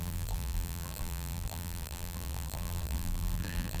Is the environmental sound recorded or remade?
remade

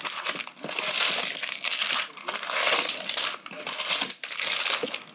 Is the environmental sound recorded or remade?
recorded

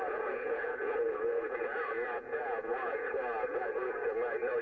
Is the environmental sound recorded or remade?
remade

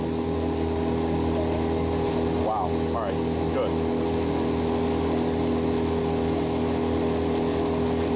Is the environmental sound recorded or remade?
recorded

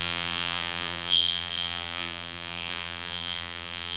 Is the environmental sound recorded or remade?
remade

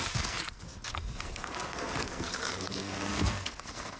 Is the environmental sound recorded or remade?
remade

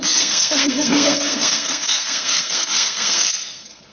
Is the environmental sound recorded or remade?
remade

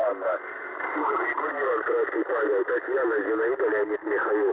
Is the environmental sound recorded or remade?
recorded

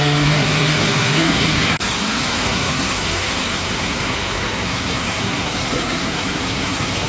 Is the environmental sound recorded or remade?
remade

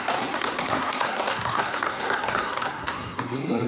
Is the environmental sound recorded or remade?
remade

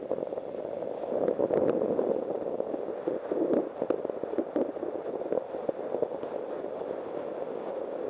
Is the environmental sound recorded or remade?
recorded